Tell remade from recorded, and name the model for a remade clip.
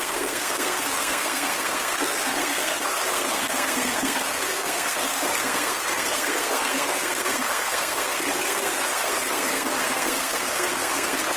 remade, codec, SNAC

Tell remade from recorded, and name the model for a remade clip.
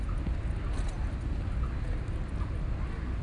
recorded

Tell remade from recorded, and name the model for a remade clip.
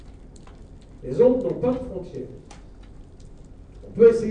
recorded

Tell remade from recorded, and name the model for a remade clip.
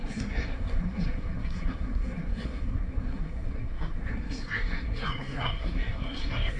remade, codec, SNAC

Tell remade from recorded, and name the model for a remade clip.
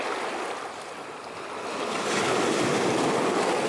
recorded